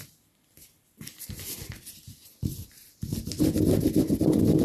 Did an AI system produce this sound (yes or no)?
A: no